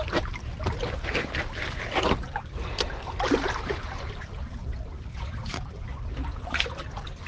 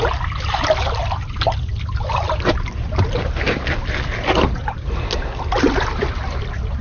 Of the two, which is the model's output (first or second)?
first